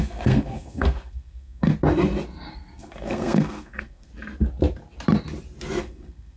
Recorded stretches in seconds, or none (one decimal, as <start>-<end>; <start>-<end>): 1.7-2.5; 4.1-5.8